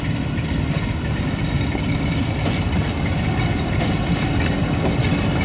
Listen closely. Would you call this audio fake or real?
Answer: real